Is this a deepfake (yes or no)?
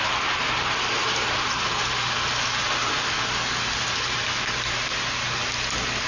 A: no